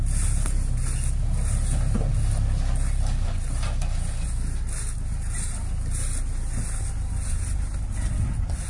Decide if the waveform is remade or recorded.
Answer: recorded